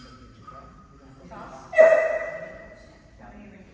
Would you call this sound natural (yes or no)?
yes